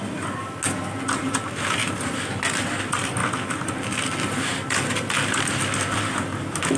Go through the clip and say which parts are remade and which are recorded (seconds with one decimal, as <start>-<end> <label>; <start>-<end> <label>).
0.0-6.8 recorded